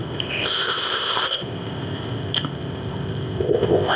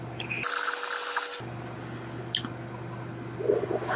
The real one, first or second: second